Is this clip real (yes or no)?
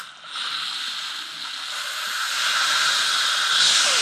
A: yes